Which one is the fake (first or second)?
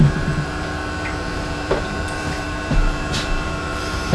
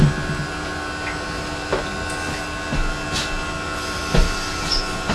first